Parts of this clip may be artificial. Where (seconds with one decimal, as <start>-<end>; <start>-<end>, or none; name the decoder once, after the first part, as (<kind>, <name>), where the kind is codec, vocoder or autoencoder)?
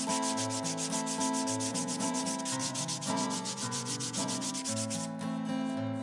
1.7-2.2 (vocoder, Vocos); 2.6-4.5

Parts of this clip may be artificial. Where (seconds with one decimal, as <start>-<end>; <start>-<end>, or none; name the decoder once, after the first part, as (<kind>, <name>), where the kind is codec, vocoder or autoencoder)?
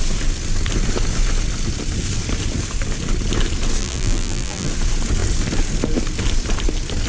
3.8-4.7 (vocoder, BigVGAN v2)